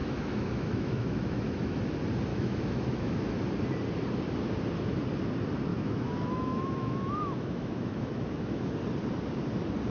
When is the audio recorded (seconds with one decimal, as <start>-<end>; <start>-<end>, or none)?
1.9-2.3; 3.3-5.7; 8.7-9.9